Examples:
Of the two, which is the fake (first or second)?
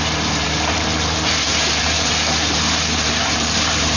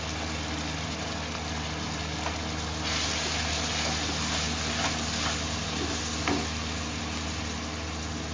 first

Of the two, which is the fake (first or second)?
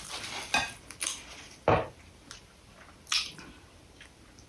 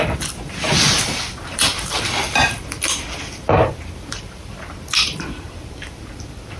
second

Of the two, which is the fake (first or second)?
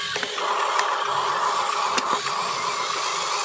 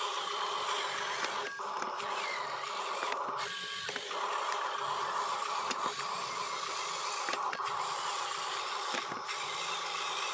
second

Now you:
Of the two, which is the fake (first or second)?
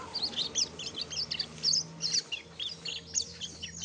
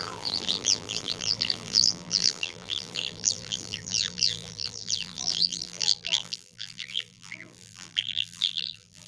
second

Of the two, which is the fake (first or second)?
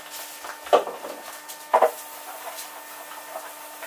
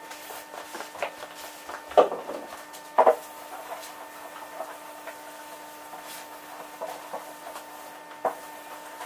second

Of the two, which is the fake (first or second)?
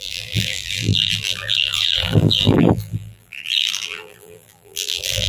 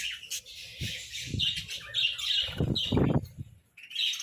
first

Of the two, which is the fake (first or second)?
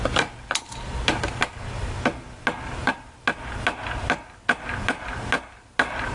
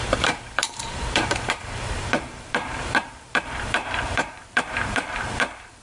second